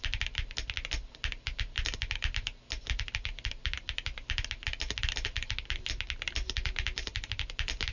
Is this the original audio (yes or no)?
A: yes